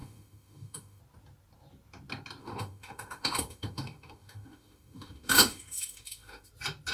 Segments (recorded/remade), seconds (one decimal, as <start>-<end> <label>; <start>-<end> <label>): 0.0-1.0 remade; 1.0-2.4 recorded; 2.4-6.5 remade; 6.5-6.9 recorded